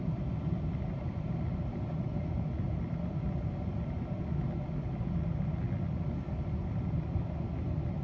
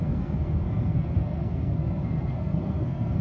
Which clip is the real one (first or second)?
first